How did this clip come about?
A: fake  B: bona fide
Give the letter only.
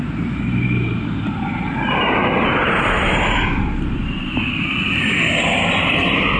A